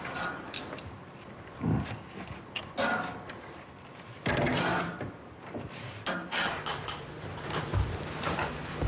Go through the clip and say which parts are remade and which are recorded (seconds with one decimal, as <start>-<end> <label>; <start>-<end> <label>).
0.0-6.7 recorded; 6.7-8.5 remade; 8.5-8.9 recorded